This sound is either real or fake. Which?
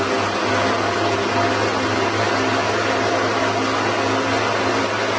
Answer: real